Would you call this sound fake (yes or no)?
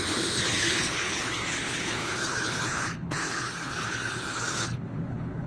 yes